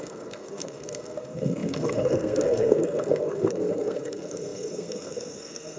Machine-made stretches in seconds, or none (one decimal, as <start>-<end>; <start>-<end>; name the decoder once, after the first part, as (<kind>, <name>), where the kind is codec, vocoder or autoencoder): 0.0-5.8 (codec, SNAC)